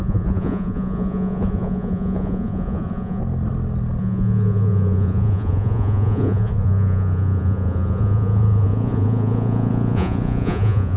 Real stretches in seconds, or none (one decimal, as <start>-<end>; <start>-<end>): 3.2-4.0